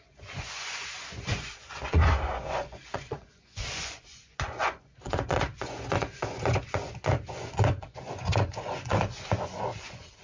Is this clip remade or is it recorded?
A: remade